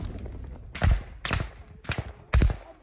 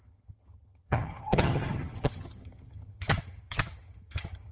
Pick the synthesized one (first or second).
second